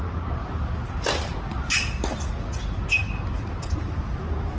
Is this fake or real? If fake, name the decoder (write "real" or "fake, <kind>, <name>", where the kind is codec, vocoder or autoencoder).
real